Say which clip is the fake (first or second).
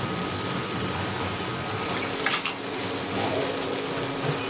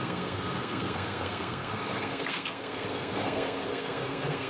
second